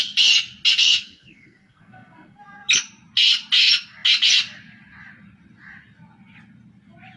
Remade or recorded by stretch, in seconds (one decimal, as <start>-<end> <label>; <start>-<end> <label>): 0.0-0.8 recorded; 0.8-2.7 remade; 2.7-7.2 recorded